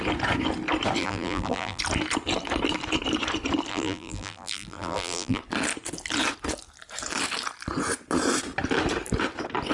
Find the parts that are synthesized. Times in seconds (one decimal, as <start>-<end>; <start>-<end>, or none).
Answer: 1.0-1.8; 3.7-5.4